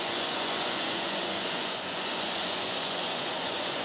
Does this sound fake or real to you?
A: fake